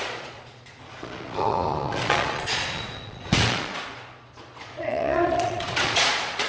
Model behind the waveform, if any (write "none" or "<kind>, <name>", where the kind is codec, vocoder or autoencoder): vocoder, Vocos